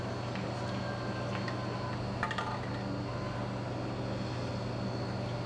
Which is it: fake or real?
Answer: real